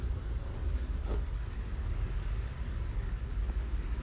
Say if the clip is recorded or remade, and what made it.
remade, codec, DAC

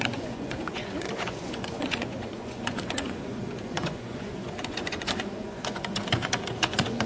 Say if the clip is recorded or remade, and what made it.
remade, vocoder, Vocos